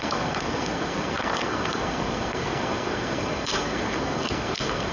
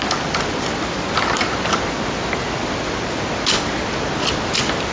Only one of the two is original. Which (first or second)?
second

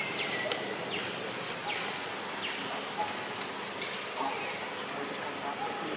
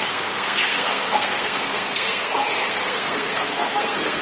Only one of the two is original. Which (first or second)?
first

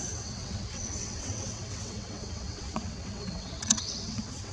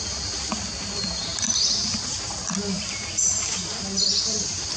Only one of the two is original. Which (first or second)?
second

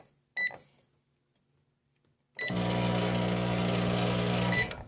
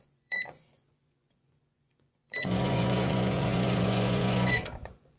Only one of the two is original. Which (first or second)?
first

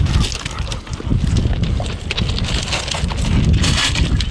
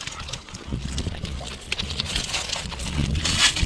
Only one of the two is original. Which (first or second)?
first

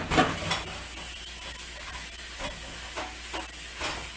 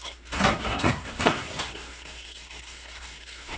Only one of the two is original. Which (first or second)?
first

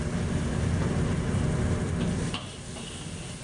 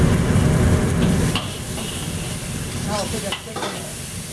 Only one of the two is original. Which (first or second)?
first